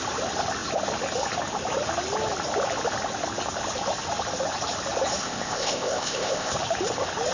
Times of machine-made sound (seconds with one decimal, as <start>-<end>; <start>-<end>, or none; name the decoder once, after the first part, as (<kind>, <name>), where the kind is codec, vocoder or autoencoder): 5.2-6.5 (codec, ZipCodec)